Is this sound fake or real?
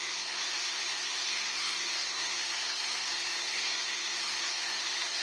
fake